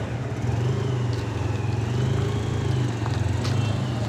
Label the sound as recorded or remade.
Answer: recorded